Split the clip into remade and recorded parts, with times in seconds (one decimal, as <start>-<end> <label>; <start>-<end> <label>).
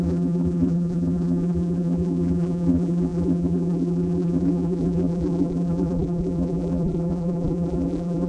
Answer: 0.0-8.3 remade